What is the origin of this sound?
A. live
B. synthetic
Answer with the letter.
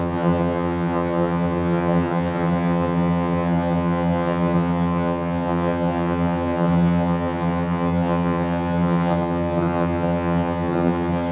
B